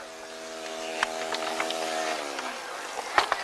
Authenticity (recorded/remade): recorded